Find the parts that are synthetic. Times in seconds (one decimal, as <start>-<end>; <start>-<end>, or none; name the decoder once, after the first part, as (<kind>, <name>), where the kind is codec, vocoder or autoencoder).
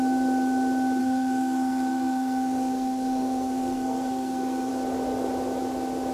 1.0-4.7 (codec, SNAC)